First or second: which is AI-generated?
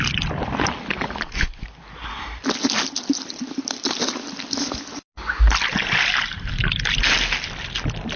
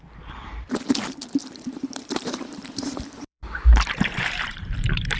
second